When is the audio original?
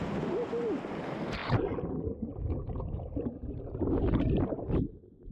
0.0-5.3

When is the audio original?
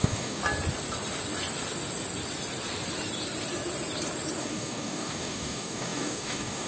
0.4-4.4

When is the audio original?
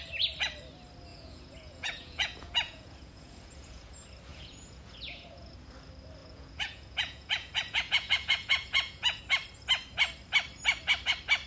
0.0-1.1; 3.9-4.3; 5.5-6.2; 9.2-11.5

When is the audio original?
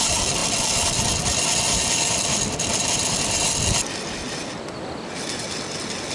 0.0-6.1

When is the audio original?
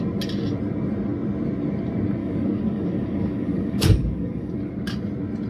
0.0-2.2; 4.7-5.5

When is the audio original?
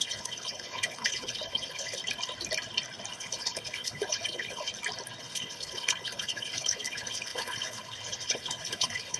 2.0-3.1; 4.7-5.2